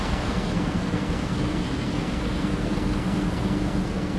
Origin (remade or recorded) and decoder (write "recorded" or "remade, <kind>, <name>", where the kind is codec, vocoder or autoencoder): remade, codec, SNAC